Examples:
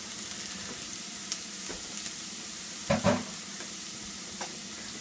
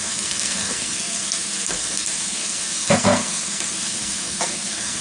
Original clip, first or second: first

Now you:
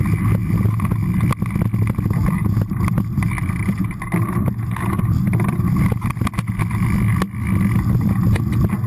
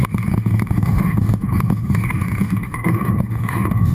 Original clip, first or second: first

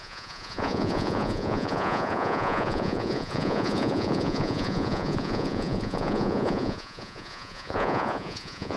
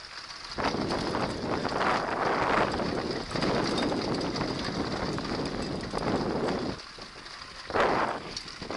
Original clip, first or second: second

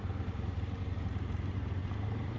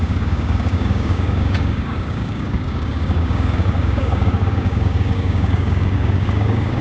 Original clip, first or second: first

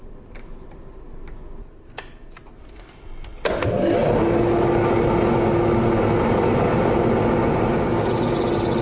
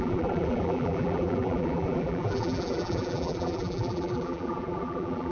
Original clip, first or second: first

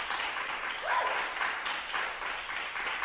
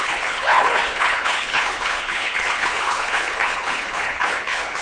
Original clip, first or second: first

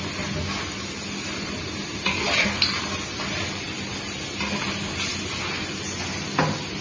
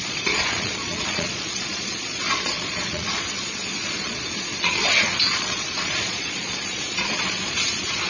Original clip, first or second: first